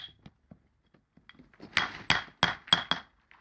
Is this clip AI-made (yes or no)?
no